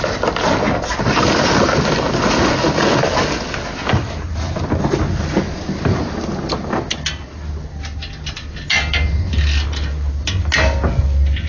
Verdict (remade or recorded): recorded